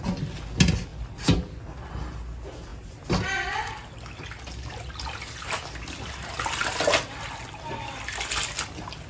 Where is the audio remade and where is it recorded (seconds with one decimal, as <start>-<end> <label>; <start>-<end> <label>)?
0.0-9.1 recorded